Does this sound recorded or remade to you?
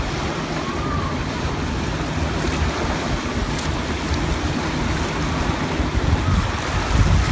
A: recorded